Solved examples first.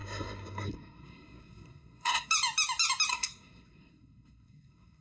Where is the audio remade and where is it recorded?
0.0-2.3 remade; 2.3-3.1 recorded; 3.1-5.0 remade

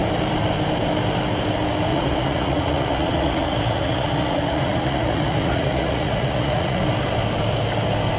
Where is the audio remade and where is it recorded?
0.0-1.9 recorded; 1.9-6.8 remade; 6.8-8.2 recorded

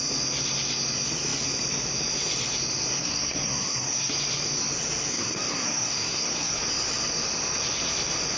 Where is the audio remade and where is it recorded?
0.0-3.0 recorded; 3.0-4.1 remade; 4.1-5.1 recorded; 5.1-6.6 remade; 6.6-8.4 recorded

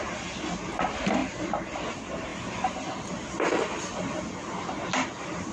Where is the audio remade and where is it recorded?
0.0-5.5 recorded